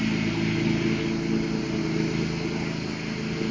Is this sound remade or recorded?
recorded